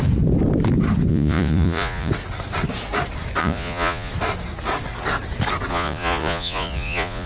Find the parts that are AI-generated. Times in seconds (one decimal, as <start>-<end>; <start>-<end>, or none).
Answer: 1.1-2.1; 3.4-4.1; 5.7-7.3